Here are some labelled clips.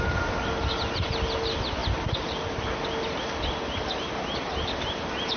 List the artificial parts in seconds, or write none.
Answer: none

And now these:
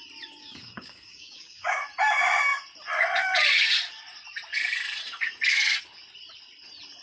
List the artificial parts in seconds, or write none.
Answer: 0.4-1.8 (codec, DAC)

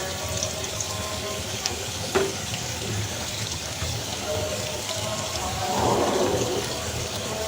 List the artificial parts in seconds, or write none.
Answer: 0.7-7.5 (codec, DAC)